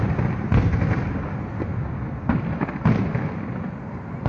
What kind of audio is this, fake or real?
real